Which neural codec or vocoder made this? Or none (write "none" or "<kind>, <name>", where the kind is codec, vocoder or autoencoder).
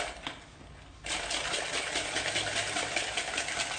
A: none